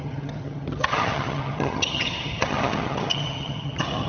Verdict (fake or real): fake